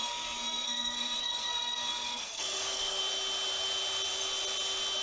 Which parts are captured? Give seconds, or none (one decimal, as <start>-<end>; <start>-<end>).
3.0-5.0